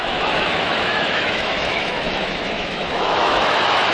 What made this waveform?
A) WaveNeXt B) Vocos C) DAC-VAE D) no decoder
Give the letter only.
C